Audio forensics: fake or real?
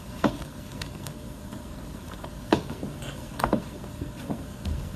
fake